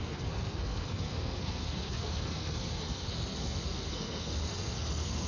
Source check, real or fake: fake